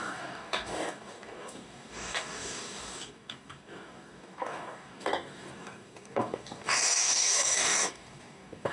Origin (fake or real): fake